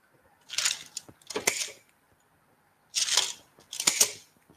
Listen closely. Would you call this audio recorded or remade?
recorded